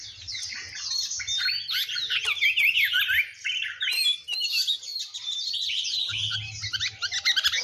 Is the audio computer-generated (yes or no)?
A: no